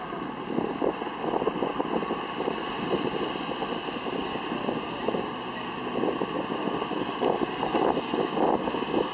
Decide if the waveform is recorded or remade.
recorded